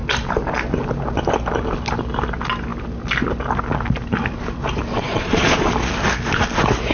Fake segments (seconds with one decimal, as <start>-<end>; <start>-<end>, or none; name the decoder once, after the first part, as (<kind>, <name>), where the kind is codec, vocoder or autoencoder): 4.9-5.7 (vocoder, Vocos)